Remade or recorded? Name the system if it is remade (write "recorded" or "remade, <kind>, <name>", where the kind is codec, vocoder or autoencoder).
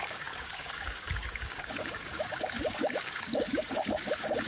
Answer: remade, codec, DAC